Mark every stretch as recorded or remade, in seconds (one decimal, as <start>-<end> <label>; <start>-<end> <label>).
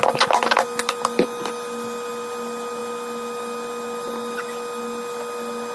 0.0-5.7 recorded